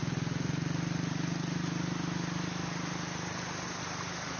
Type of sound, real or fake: real